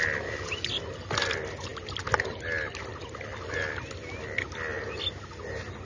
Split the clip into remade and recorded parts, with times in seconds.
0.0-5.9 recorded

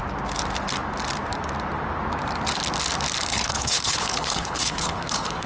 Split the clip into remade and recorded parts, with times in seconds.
0.0-3.3 recorded; 3.3-5.5 remade

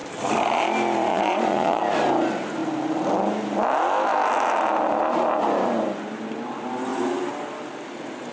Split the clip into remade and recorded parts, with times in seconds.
0.0-1.1 recorded; 1.1-1.8 remade; 1.8-8.3 recorded

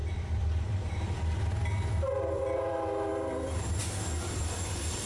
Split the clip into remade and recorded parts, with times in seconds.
0.0-3.8 remade; 3.8-4.4 recorded; 4.4-5.1 remade

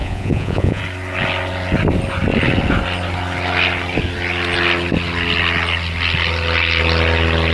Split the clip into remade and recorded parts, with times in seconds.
0.0-0.8 remade; 0.8-7.5 recorded

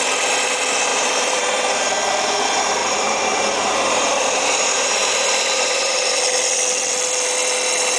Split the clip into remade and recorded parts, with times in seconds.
0.0-0.9 recorded; 0.9-1.8 remade; 1.8-2.8 recorded; 2.8-6.2 remade; 6.2-8.0 recorded

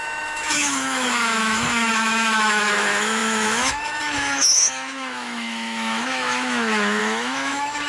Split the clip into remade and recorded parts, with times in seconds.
0.0-7.9 remade

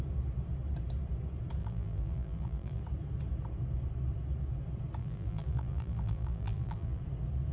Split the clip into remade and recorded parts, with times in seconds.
0.0-1.6 recorded; 1.6-2.8 remade; 2.8-5.0 recorded; 5.0-7.0 remade; 7.0-7.5 recorded